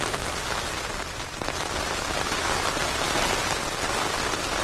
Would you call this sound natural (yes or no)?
yes